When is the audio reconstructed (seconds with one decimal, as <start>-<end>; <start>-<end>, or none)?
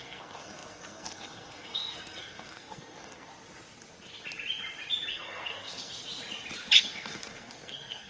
0.0-3.3; 5.1-5.9; 6.8-8.1